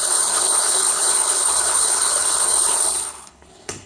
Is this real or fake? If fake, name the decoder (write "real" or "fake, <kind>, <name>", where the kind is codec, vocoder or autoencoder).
fake, codec, HILCodec